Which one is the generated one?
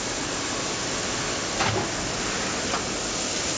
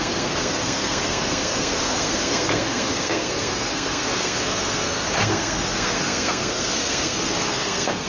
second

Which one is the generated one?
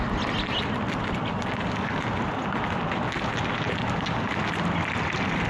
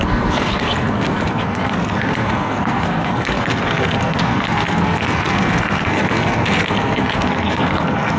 second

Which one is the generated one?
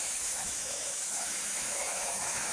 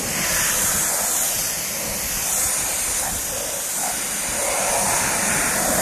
first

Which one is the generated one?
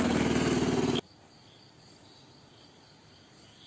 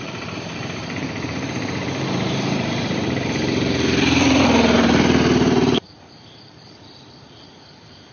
second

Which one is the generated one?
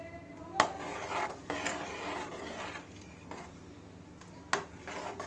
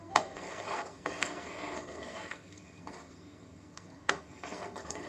second